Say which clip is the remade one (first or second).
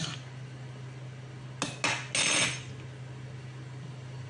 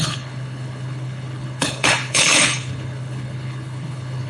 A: second